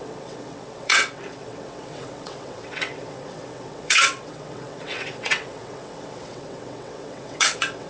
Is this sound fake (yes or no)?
yes